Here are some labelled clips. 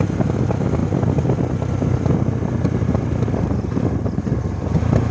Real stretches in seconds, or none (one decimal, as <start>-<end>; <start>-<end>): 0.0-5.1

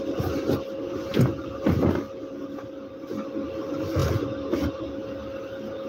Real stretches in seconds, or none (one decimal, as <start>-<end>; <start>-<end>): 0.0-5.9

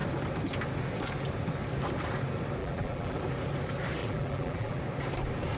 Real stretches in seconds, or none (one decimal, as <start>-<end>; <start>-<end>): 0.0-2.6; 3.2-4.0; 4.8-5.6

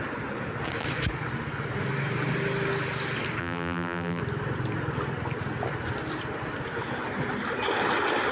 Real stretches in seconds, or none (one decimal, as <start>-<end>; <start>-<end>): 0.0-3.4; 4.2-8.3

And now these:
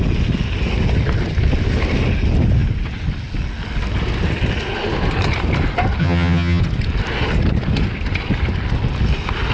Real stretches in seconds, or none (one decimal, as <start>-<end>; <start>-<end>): 0.0-6.0; 6.6-9.5